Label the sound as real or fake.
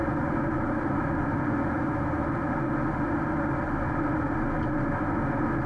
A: real